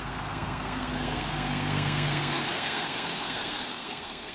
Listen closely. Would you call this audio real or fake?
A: fake